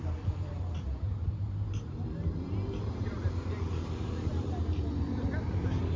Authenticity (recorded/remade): remade